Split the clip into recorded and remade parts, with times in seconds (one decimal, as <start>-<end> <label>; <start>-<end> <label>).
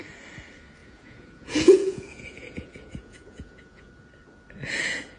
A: 0.0-0.8 recorded; 0.8-3.9 remade; 3.9-5.2 recorded